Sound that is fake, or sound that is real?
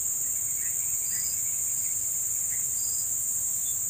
real